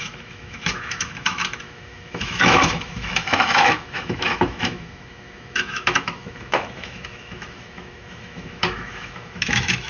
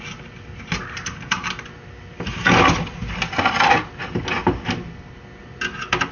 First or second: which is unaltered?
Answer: second